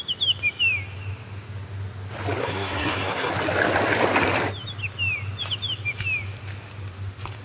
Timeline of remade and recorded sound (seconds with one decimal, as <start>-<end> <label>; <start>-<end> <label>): 0.0-2.4 recorded; 2.4-3.3 remade; 3.3-7.4 recorded